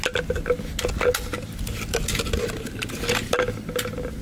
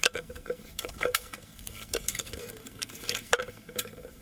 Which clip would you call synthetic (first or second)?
second